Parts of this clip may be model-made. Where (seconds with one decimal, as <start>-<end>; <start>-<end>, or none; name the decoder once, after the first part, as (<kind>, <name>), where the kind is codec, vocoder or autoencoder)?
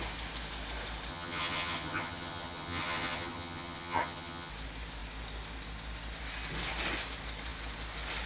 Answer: 1.1-4.5 (vocoder, HiFi-GAN)